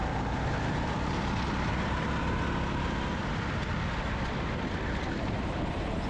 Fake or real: real